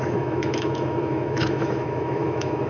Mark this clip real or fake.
fake